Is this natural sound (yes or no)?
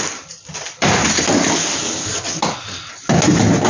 yes